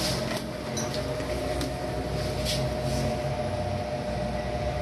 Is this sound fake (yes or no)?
no